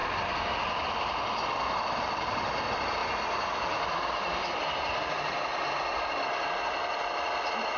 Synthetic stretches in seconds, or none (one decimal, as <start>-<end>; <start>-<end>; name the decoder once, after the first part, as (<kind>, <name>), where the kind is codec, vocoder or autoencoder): none